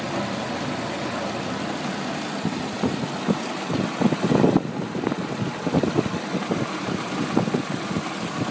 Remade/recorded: recorded